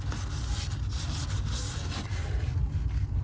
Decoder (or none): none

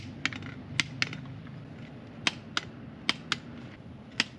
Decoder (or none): none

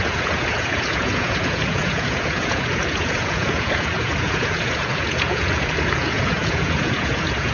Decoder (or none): vocoder, Vocos